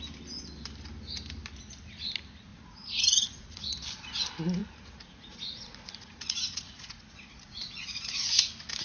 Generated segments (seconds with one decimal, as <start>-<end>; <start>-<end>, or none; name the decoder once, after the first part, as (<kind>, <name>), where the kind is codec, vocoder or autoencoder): 2.5-3.6 (vocoder, Vocos); 4.6-8.2